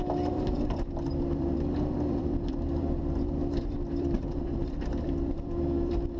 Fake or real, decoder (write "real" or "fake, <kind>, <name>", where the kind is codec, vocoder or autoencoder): fake, vocoder, BigVGAN v2